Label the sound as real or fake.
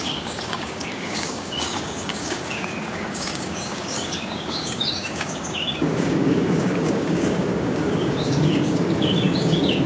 fake